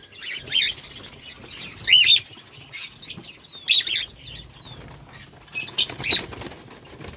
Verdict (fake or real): real